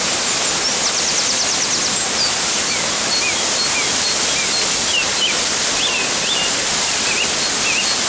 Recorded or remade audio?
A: recorded